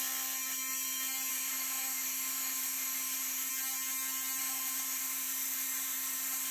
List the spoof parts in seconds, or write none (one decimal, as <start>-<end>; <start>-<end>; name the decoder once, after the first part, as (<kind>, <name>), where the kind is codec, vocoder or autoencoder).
1.3-3.5 (autoencoder, DAC-VAE); 4.4-6.5